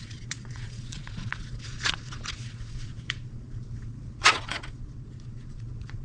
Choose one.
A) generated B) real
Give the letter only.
A